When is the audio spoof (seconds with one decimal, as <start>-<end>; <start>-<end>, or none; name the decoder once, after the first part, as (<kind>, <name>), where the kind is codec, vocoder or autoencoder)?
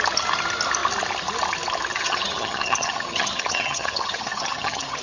1.9-5.0 (vocoder, HiFi-GAN)